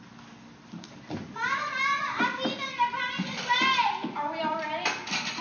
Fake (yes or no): no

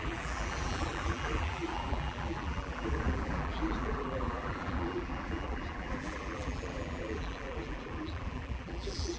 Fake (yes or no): yes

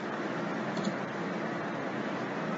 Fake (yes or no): no